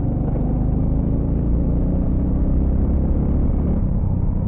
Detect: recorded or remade recorded